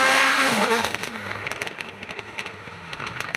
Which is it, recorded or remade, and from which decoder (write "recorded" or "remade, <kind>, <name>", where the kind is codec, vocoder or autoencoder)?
remade, autoencoder, DAC-VAE